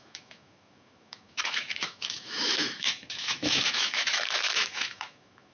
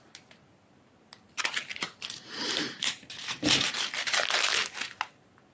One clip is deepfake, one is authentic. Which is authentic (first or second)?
second